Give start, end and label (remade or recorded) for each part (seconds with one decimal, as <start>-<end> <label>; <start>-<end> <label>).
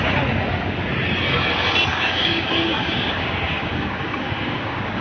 0.0-1.9 recorded; 1.9-5.0 remade